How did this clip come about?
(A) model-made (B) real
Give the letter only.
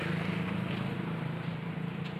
A